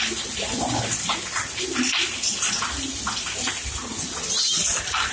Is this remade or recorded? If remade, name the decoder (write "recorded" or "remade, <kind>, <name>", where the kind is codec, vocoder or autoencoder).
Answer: recorded